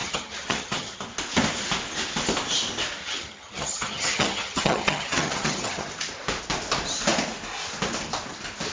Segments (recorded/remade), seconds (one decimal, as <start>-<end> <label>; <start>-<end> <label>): 0.0-1.0 remade; 1.0-3.0 recorded; 3.0-5.9 remade; 5.9-8.7 recorded